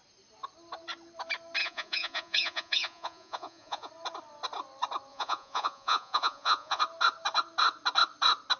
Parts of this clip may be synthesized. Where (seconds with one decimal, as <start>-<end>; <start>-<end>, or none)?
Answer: 1.6-3.9; 5.1-6.8